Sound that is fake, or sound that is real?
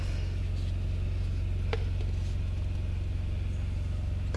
real